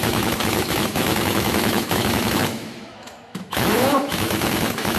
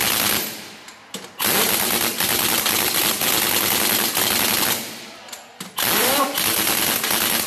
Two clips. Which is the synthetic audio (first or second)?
first